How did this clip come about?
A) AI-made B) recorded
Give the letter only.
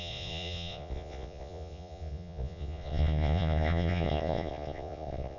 A